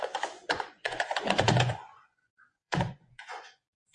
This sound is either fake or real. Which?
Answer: fake